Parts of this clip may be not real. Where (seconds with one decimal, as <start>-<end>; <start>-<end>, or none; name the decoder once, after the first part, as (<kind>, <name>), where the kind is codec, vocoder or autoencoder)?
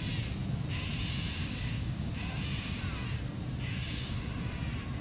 1.4-2.1 (codec, DAC)